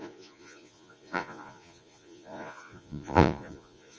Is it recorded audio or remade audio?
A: remade